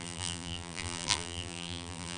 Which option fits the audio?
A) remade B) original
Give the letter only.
A